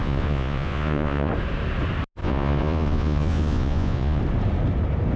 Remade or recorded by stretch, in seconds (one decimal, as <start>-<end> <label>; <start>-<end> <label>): 0.0-1.3 remade; 1.3-2.2 recorded; 2.2-4.2 remade; 4.2-5.2 recorded